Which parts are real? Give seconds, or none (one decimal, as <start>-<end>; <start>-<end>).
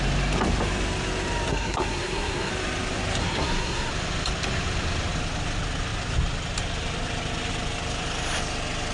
0.0-1.5; 2.5-3.2; 3.9-8.9